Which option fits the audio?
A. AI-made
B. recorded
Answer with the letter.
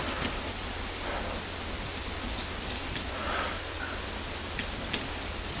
B